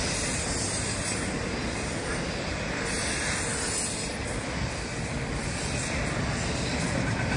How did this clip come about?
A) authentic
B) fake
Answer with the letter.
A